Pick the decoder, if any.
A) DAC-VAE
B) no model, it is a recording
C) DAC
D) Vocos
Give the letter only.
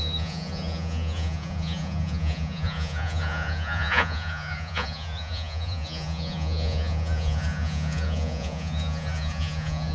D